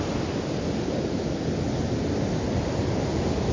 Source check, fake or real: real